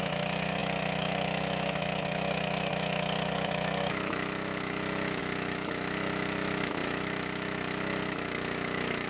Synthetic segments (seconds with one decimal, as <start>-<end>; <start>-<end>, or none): 0.0-9.1